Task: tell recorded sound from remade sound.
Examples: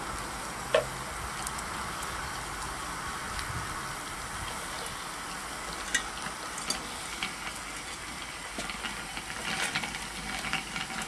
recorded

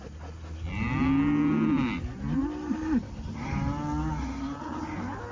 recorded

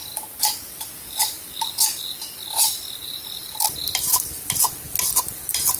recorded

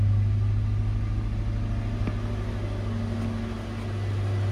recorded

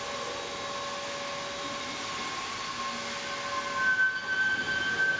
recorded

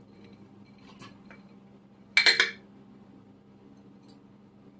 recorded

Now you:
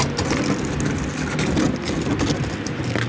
recorded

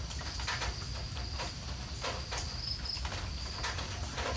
recorded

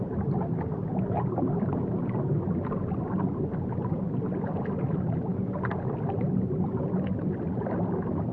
recorded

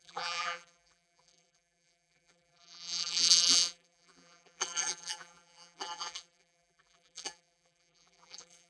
remade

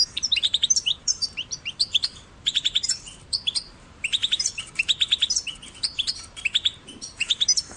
remade